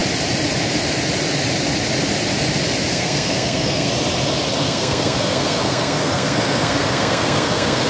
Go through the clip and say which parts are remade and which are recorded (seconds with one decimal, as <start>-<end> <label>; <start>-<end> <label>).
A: 0.0-2.9 recorded; 2.9-3.9 remade; 3.9-4.6 recorded; 4.6-7.9 remade